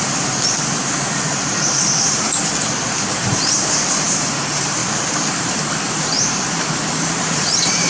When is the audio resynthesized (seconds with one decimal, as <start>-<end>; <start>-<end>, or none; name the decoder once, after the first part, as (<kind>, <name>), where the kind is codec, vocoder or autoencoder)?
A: 0.0-2.4 (vocoder, BigVGAN v2); 3.3-4.8; 5.3-7.9